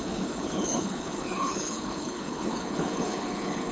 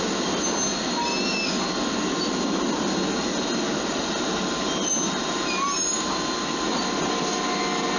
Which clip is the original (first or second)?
second